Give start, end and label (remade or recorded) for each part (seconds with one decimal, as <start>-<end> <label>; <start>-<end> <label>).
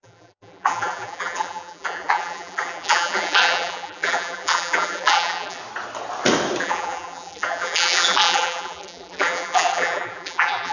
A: 0.0-5.6 remade; 5.6-6.6 recorded; 6.6-10.7 remade